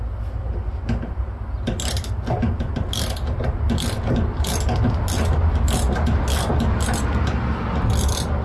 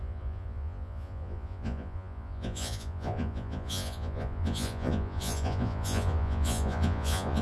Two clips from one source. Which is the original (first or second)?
first